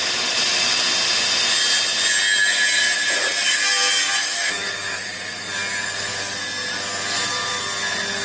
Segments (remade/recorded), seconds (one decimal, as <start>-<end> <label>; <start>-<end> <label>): 0.0-4.2 recorded; 4.2-5.1 remade; 5.1-8.2 recorded